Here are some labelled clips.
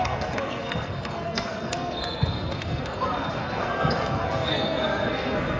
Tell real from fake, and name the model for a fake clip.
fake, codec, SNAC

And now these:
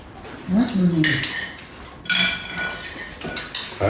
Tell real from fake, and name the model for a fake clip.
real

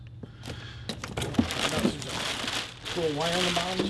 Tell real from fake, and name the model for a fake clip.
real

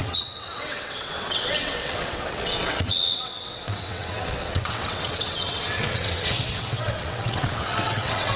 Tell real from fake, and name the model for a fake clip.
fake, vocoder, WaveNeXt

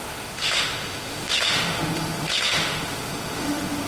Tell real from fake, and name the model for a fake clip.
fake, autoencoder, DAC-VAE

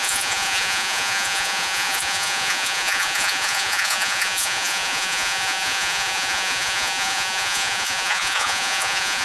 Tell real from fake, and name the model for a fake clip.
fake, vocoder, Vocos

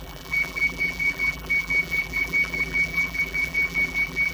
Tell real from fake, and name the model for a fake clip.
fake, vocoder, BigVGAN v2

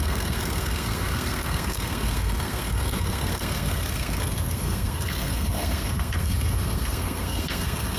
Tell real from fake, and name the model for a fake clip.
fake, codec, SNAC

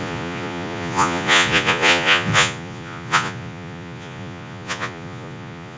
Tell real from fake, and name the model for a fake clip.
fake, vocoder, Vocos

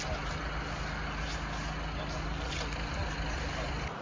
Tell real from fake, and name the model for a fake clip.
real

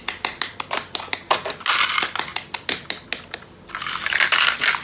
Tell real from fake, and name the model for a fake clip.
real